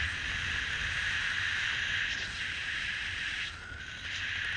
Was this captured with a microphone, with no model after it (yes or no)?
yes